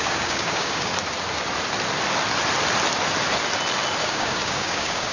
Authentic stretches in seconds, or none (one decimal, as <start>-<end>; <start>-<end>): 0.9-4.0